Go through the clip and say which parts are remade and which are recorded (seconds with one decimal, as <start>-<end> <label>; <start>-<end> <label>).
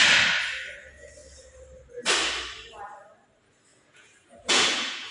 0.0-3.7 recorded; 3.7-5.1 remade